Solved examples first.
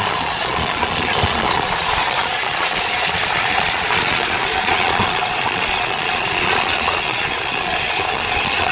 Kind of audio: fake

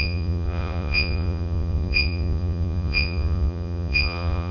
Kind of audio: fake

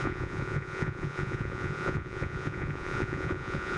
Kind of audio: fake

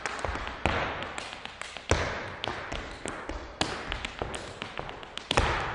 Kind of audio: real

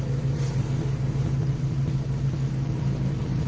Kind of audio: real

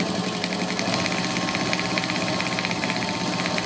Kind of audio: real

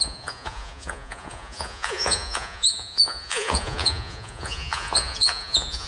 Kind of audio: fake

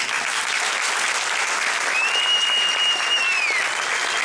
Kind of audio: real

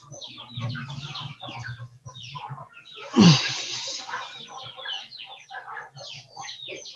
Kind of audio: fake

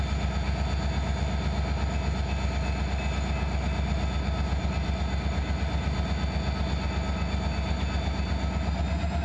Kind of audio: real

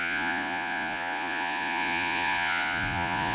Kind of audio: fake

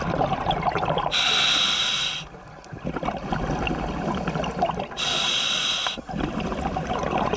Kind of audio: real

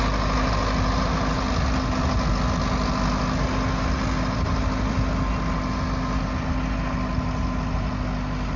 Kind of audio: real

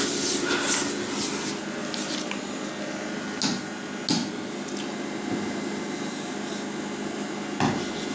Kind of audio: real